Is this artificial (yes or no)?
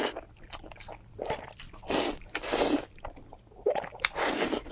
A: yes